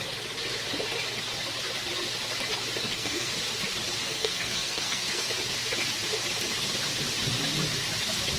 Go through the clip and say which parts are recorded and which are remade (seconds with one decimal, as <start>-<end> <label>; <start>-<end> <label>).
0.0-2.8 recorded; 2.8-3.3 remade; 3.3-4.0 recorded; 4.0-5.3 remade; 5.3-8.4 recorded